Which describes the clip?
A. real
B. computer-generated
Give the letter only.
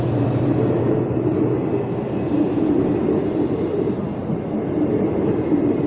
A